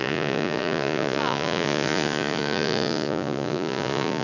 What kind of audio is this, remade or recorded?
remade